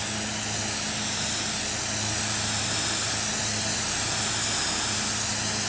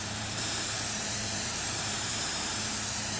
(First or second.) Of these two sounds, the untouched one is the first